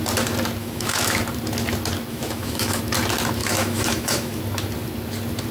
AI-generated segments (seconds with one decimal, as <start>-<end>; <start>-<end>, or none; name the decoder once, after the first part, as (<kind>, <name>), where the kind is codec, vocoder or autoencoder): 0.6-1.2 (autoencoder, DAC-VAE); 2.1-2.8; 3.4-4.4